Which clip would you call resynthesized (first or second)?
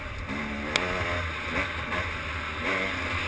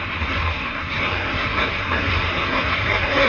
second